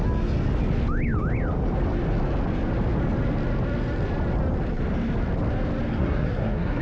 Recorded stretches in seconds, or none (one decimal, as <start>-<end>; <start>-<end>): 0.0-5.9